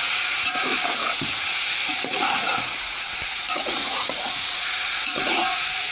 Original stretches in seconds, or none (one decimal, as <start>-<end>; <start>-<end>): 0.7-1.4